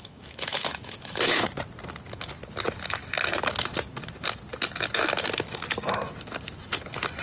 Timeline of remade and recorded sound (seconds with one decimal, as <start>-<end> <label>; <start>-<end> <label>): 0.0-1.5 remade; 1.5-7.2 recorded